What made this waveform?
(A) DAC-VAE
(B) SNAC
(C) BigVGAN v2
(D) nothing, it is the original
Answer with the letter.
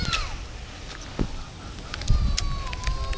D